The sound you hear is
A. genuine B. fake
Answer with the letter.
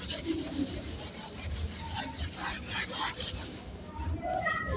B